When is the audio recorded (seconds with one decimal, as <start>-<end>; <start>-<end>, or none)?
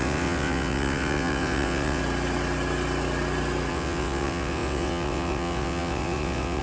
2.0-3.7